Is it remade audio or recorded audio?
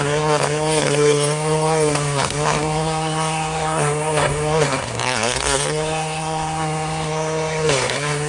remade